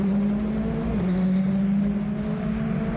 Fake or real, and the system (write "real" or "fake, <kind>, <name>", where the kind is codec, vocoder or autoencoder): real